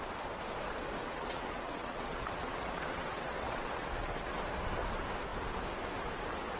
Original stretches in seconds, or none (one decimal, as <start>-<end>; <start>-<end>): 0.0-1.0; 4.4-6.6